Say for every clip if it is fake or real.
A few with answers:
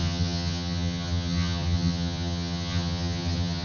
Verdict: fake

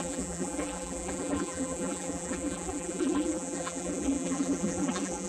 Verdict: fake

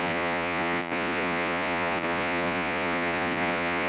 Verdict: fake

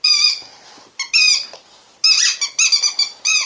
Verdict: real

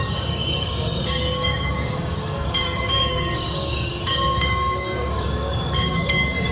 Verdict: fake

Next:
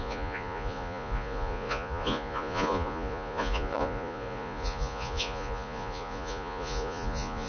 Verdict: fake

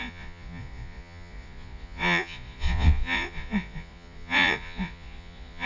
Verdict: fake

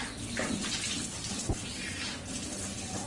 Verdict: real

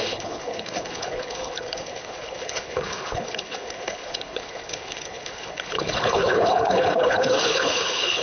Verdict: fake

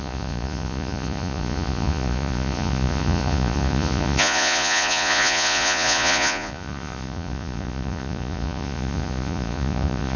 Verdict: fake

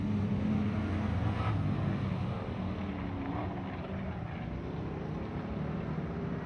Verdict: real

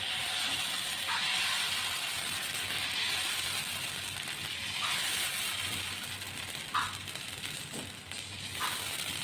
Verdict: real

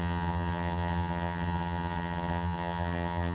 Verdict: fake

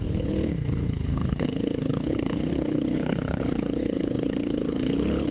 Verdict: fake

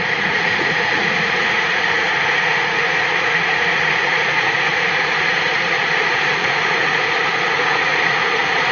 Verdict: fake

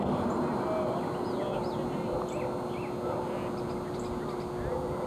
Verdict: real